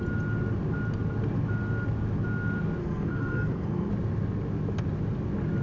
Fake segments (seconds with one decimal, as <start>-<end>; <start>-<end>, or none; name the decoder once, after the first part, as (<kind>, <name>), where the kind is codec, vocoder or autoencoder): 2.8-3.9 (codec, SNAC)